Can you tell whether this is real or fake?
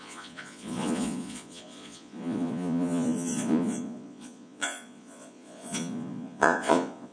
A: fake